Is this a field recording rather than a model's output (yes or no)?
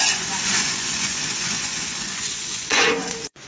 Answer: no